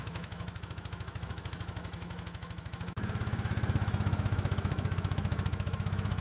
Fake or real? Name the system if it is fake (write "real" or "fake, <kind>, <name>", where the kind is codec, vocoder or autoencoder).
fake, autoencoder, DAC-VAE